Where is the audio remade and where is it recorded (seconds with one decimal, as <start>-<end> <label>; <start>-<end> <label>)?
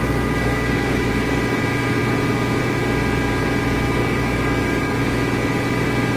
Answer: 0.0-1.1 remade; 1.1-4.0 recorded; 4.0-5.0 remade; 5.0-6.2 recorded